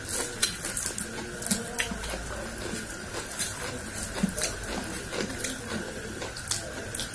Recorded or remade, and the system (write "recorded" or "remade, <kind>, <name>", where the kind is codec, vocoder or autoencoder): recorded